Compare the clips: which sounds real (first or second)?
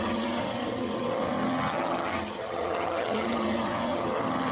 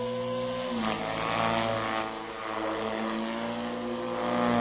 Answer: second